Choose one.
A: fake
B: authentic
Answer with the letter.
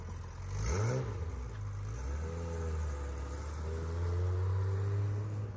B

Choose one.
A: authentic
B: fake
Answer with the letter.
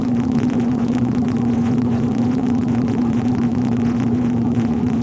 B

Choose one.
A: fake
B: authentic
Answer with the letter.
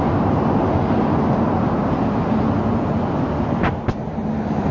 B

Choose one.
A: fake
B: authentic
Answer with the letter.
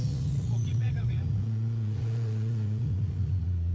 A